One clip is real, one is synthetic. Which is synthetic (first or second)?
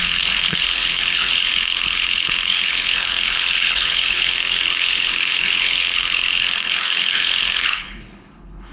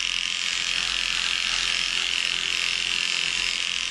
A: first